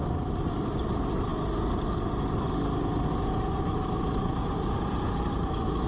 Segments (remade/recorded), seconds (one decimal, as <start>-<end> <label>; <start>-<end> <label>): 0.0-5.9 recorded